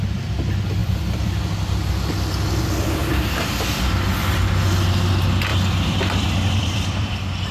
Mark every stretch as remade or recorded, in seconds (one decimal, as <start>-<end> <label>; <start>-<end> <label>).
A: 0.0-0.8 recorded; 0.8-1.9 remade; 1.9-3.0 recorded; 3.0-4.4 remade; 4.4-5.5 recorded; 5.5-7.1 remade; 7.1-7.5 recorded